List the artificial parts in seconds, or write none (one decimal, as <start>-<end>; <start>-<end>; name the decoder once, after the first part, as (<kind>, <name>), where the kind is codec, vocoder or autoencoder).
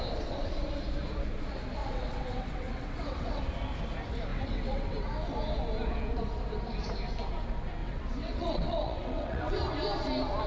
1.8-3.4 (vocoder, WaveNeXt); 4.3-5.0; 7.8-9.5